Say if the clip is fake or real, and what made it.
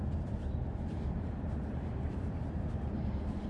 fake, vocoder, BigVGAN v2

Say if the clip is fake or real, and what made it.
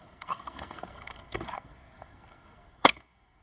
fake, codec, SNAC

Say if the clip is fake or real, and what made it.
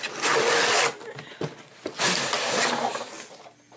real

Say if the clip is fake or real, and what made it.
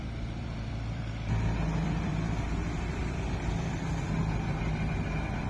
fake, vocoder, BigVGAN v2